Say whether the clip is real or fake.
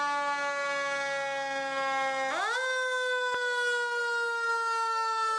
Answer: real